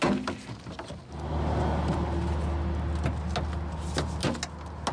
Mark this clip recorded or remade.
recorded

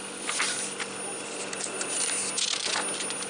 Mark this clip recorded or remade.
recorded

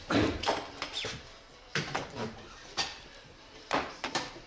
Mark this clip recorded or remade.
remade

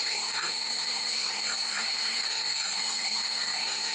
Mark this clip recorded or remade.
remade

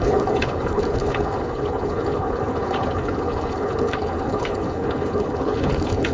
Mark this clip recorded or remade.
remade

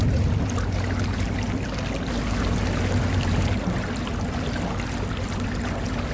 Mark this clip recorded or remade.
recorded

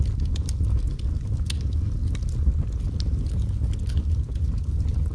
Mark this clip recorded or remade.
recorded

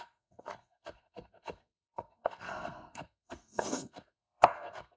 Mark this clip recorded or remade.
remade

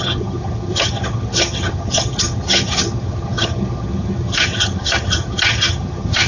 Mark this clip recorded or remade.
remade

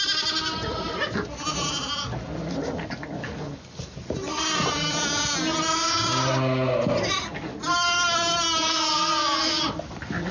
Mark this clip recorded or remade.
recorded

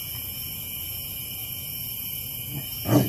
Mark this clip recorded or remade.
remade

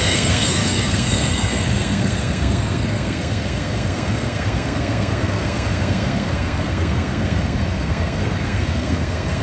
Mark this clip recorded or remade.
remade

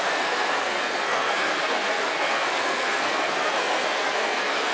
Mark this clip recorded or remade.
remade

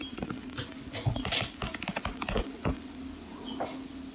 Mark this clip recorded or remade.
recorded